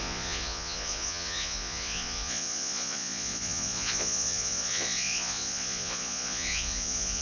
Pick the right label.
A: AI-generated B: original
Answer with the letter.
A